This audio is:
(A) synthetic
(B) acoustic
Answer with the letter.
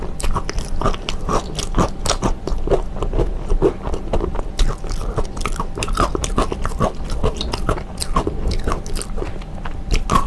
B